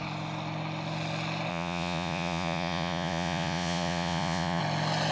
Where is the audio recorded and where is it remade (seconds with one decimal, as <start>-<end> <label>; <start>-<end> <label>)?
0.0-1.5 recorded; 1.5-4.6 remade; 4.6-5.1 recorded